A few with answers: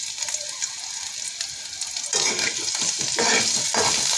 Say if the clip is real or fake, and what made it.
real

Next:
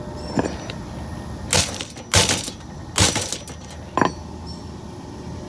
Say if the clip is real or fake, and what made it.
real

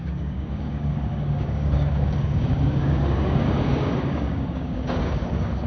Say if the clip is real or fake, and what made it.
fake, codec, DAC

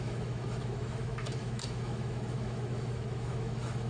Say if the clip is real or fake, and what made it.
fake, autoencoder, DAC-VAE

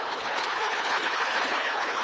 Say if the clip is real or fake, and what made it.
fake, codec, HILCodec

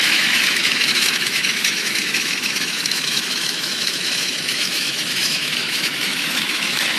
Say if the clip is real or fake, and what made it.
fake, autoencoder, DAC-VAE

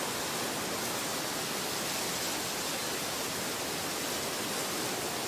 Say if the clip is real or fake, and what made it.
real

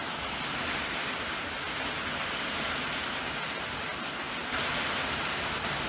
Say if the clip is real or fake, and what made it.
real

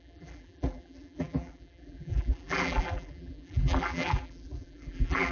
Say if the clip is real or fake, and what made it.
fake, vocoder, BigVGAN v2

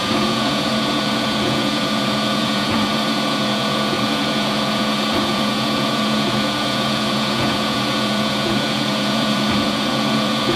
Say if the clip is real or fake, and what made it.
fake, vocoder, Vocos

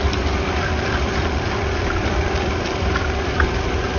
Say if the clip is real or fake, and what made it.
fake, vocoder, BigVGAN v2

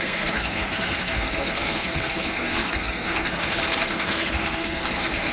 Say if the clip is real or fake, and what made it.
fake, codec, SNAC